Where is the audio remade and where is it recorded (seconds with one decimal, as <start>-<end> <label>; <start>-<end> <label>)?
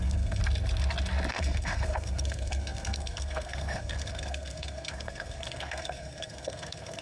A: 0.0-0.4 remade; 0.4-1.3 recorded; 1.3-7.0 remade